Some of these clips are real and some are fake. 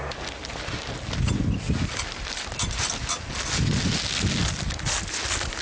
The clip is real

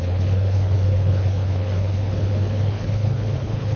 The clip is fake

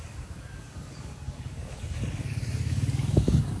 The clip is fake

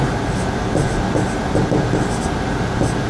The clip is real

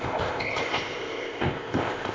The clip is fake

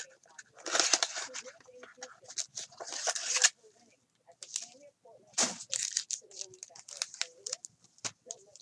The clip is real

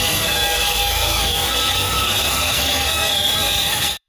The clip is fake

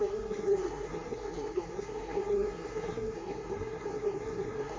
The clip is fake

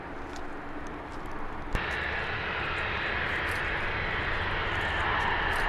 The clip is real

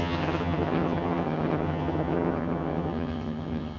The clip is fake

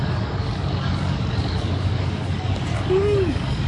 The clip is fake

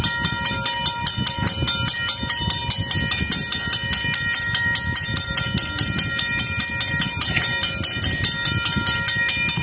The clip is real